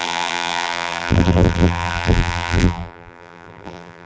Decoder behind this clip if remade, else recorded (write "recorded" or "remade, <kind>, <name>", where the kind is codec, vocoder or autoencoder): remade, vocoder, BigVGAN v2